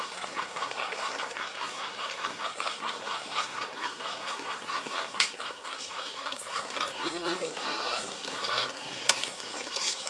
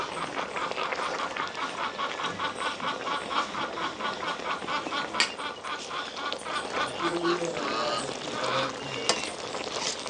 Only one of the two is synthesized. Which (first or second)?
first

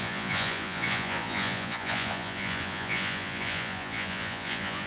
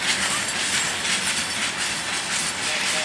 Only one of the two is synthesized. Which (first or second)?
first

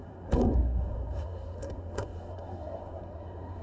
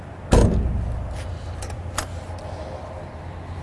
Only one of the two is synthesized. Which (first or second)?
first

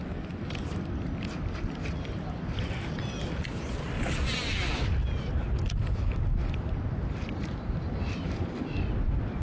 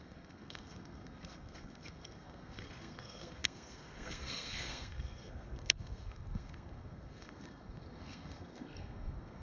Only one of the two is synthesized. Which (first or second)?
second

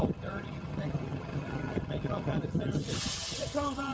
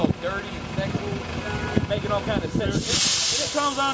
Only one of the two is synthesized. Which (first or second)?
first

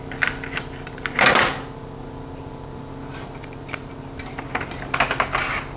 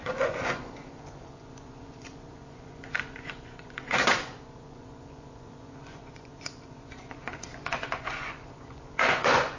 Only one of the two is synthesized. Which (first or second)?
second